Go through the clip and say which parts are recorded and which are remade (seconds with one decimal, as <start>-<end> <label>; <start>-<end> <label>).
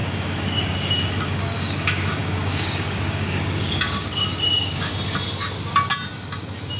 0.0-4.9 remade; 4.9-6.8 recorded